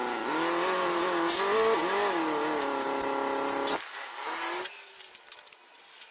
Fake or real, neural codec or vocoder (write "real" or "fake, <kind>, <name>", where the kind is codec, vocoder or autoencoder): real